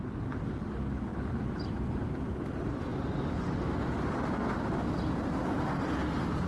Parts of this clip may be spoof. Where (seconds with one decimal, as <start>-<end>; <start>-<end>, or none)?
none